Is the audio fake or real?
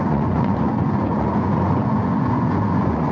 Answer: fake